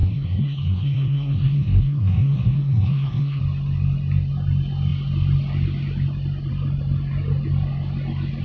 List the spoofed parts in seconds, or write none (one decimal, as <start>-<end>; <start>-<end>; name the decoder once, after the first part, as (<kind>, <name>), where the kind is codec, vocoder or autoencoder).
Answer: 0.0-3.4 (codec, SNAC)